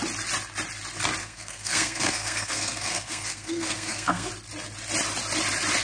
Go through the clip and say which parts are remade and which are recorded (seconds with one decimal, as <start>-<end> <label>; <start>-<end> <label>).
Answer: 0.0-1.2 recorded; 1.2-4.3 remade; 4.3-5.8 recorded